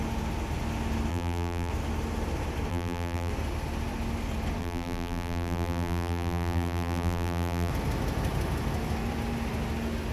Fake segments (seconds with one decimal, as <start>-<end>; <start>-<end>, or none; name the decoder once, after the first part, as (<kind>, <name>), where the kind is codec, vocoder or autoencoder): 1.1-1.7 (vocoder, BigVGAN v2); 2.7-3.3; 4.6-7.7